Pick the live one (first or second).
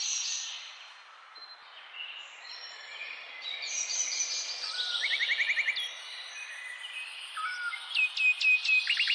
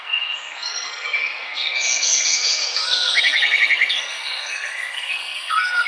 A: first